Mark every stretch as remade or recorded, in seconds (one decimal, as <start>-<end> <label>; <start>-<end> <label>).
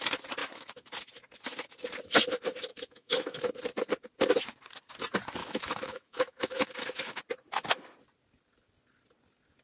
0.0-0.4 recorded; 0.4-0.9 remade; 0.9-2.7 recorded; 2.7-3.5 remade; 3.5-5.4 recorded; 5.4-7.2 remade; 7.2-9.6 recorded